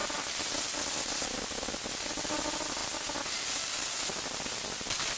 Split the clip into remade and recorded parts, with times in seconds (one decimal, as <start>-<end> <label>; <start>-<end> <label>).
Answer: 0.0-5.2 recorded